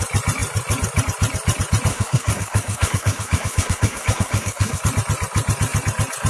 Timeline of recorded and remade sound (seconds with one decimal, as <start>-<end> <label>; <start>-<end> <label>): 0.0-1.9 recorded; 1.9-4.8 remade; 4.8-6.3 recorded